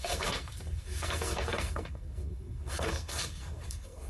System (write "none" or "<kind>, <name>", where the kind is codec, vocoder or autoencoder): codec, SNAC